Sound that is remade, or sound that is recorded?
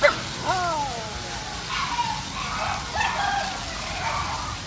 recorded